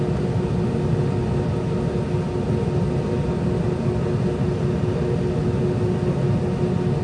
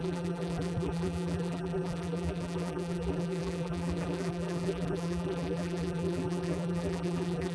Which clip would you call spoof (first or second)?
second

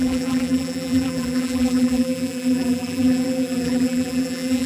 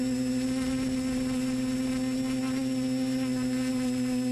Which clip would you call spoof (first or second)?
first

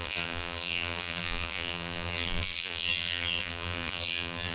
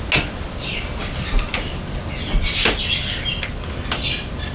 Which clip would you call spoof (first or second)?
first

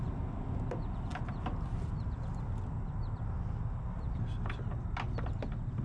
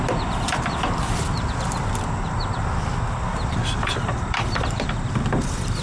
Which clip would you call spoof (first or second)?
second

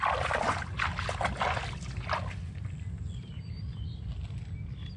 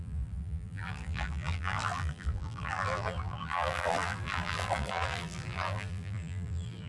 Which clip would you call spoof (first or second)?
second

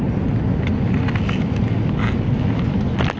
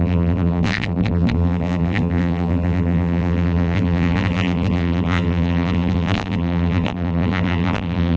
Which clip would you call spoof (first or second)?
second